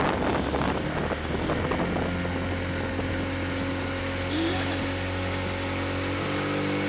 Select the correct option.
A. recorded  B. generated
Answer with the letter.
A